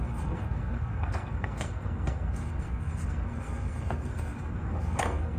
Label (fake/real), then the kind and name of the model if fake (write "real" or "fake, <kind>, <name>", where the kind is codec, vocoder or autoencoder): fake, codec, SNAC